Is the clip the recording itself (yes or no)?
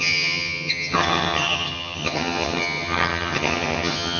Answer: no